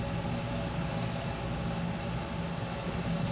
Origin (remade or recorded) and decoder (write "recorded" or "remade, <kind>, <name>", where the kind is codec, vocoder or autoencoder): recorded